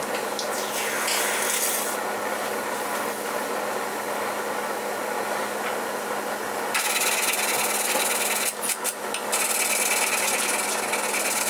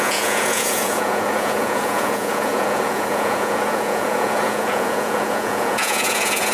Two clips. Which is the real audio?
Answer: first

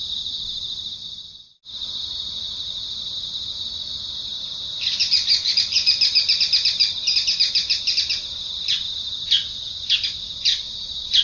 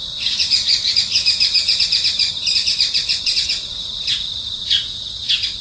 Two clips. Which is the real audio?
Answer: first